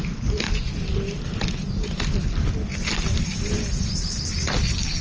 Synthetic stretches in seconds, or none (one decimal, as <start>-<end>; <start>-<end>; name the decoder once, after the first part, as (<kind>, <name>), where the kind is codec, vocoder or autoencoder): none